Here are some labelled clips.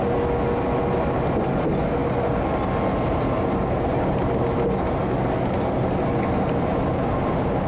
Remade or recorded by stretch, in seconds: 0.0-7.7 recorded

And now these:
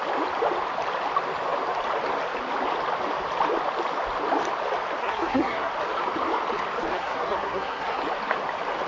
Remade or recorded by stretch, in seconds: 0.0-5.0 recorded; 5.0-5.7 remade; 5.7-6.9 recorded; 6.9-8.0 remade; 8.0-8.9 recorded

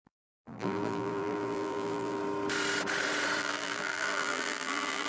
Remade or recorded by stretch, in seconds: 0.0-2.2 remade; 2.2-3.4 recorded; 3.4-5.1 remade

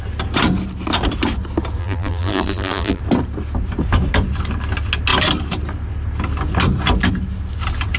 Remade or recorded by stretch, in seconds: 0.0-1.8 recorded; 1.8-3.0 remade; 3.0-8.0 recorded

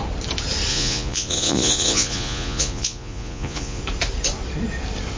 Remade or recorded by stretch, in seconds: 0.0-0.7 recorded; 0.7-3.8 remade; 3.8-5.2 recorded

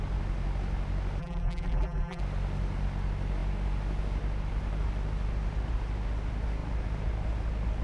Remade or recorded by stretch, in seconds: 0.0-1.2 recorded; 1.2-2.2 remade; 2.2-7.8 recorded

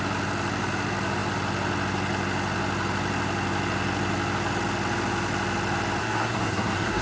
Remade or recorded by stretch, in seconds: 0.0-6.0 recorded; 6.0-7.0 remade

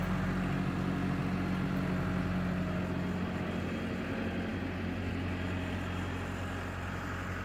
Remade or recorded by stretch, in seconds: 0.0-7.4 recorded